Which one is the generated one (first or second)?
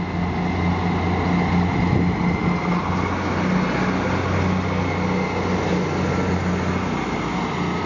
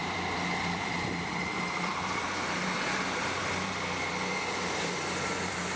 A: second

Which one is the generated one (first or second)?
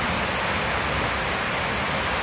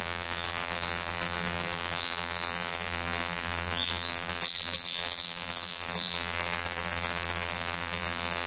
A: second